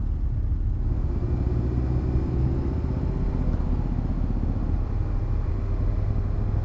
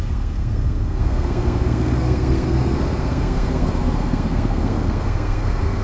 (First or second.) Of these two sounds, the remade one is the second